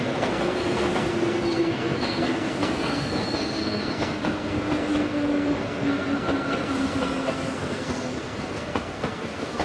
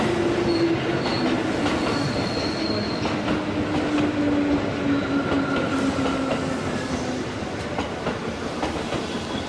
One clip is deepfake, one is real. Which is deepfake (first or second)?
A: first